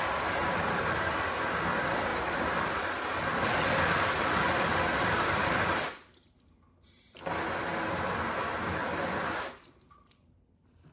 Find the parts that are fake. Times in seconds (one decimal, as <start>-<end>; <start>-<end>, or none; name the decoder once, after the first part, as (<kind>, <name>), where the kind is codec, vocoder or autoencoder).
0.4-1.3 (vocoder, BigVGAN v2); 2.1-5.8